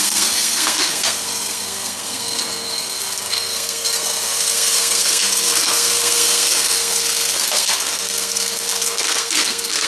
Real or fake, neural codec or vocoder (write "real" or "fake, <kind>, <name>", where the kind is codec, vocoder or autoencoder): fake, codec, SNAC